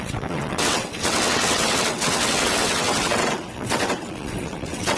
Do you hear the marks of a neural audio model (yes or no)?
yes